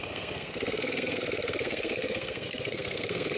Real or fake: fake